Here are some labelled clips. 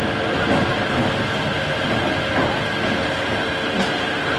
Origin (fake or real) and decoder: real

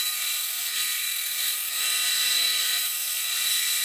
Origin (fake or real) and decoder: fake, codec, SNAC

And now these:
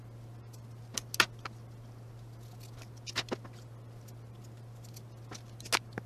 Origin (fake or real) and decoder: real